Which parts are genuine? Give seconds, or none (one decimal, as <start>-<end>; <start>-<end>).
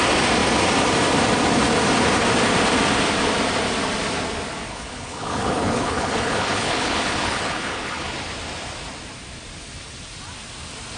0.0-4.7; 8.1-11.0